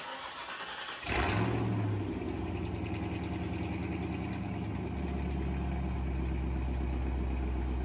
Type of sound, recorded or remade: recorded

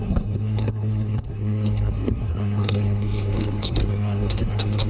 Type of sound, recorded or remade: remade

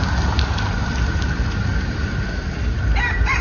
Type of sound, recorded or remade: recorded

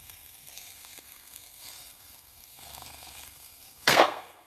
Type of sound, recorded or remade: remade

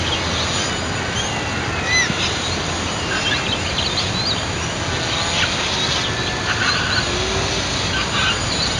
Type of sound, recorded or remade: recorded